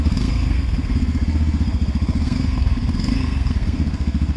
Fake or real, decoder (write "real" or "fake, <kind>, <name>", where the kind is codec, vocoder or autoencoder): fake, codec, SNAC